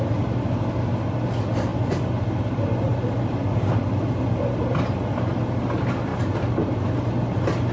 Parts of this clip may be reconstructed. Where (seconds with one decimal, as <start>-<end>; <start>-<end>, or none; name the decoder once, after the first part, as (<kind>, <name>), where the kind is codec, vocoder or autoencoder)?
none

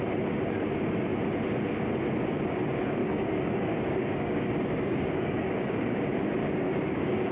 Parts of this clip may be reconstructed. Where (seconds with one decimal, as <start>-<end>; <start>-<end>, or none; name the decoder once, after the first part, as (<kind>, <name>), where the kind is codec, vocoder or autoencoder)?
3.0-6.0 (codec, DAC); 6.4-7.3